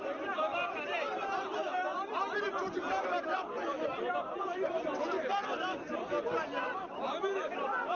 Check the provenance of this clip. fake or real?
fake